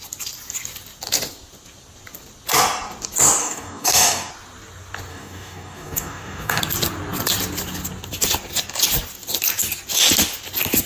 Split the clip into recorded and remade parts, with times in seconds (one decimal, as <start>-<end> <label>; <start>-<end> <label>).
0.0-3.4 recorded; 3.4-4.3 remade; 4.3-5.1 recorded; 5.1-6.6 remade; 6.6-10.9 recorded